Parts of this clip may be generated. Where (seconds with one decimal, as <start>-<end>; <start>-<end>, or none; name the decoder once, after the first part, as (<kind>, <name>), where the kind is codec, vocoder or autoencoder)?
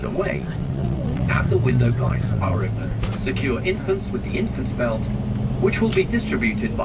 0.0-2.6 (vocoder, WaveNeXt)